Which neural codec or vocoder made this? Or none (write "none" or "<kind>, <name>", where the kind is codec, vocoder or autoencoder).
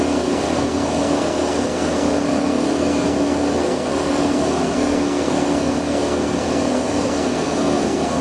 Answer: codec, SNAC